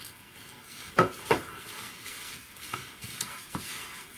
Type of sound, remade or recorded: remade